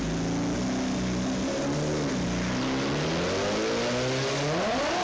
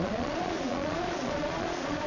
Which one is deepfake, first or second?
second